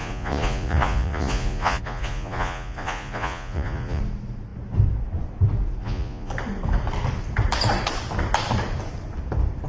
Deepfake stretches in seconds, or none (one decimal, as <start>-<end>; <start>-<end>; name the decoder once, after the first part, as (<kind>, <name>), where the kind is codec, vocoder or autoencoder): 0.0-4.0 (vocoder, Vocos); 5.8-6.3